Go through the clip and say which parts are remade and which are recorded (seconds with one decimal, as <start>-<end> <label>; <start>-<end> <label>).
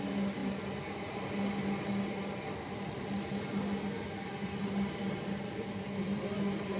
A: 0.0-6.8 recorded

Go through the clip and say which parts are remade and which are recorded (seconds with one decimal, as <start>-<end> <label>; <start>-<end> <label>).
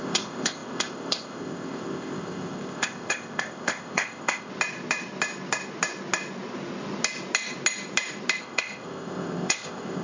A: 0.0-4.5 remade; 4.5-8.4 recorded; 8.4-10.0 remade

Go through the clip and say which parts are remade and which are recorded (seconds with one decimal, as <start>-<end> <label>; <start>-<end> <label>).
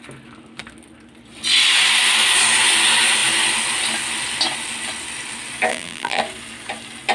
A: 0.0-5.7 recorded; 5.7-6.2 remade; 6.2-7.1 recorded